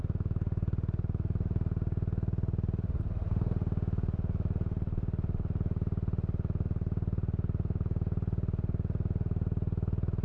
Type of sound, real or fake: real